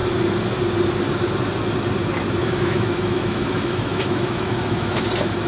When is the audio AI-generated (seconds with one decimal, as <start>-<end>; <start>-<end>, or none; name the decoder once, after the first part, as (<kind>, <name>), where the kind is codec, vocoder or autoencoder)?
2.4-5.1 (autoencoder, DAC-VAE)